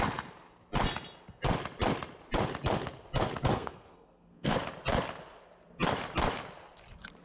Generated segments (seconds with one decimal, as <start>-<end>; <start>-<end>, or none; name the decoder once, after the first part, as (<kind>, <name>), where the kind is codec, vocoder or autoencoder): 3.5-4.5 (codec, SNAC)